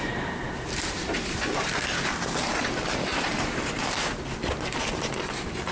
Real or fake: fake